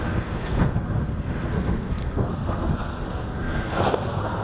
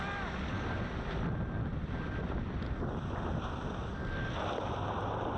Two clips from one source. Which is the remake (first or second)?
first